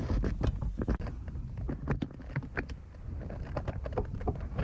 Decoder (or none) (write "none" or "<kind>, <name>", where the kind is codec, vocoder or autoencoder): none